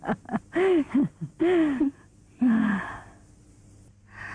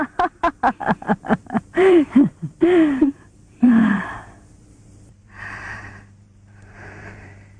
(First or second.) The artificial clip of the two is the second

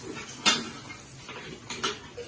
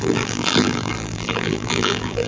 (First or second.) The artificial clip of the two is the second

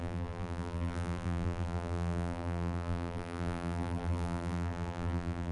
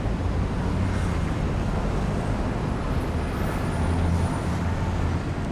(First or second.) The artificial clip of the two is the first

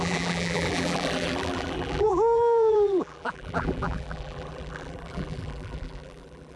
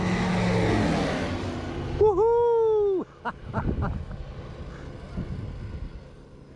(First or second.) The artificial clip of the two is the first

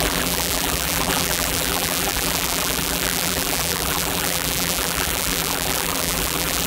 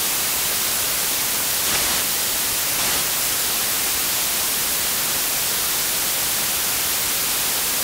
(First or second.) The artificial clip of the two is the first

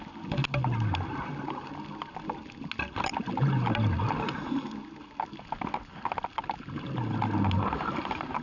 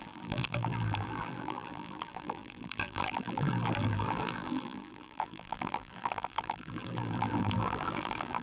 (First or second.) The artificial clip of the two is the second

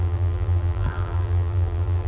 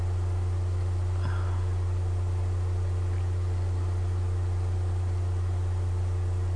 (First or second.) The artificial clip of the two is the first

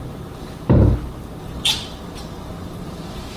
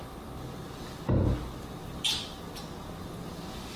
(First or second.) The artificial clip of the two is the first